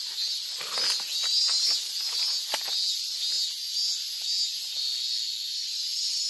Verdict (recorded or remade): recorded